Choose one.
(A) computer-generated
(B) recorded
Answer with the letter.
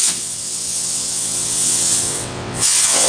A